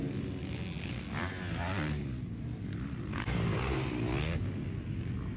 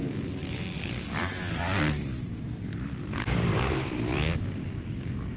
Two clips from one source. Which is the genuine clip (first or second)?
first